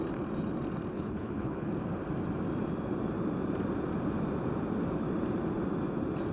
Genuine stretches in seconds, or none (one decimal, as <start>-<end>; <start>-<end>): 0.0-0.9; 1.7-6.3